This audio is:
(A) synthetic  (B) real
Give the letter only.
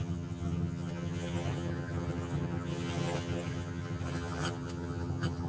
A